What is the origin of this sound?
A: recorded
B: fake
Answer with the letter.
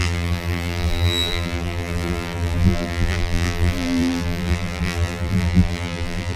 B